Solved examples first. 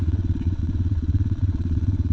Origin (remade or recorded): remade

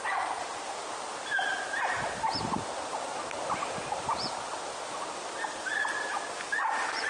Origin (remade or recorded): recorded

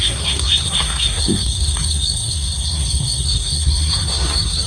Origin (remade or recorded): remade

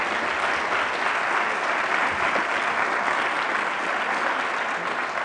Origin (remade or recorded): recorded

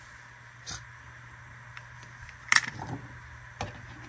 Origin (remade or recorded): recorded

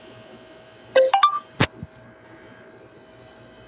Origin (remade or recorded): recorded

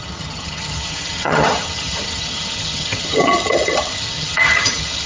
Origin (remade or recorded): remade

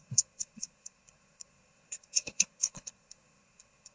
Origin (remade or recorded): remade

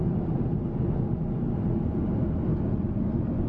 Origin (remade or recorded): recorded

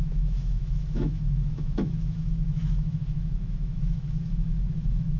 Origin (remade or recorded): remade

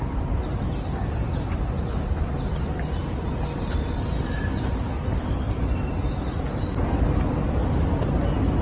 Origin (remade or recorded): recorded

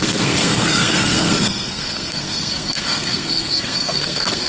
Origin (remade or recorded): remade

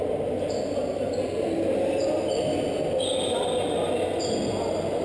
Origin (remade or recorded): recorded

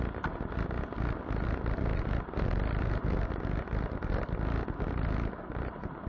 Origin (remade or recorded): recorded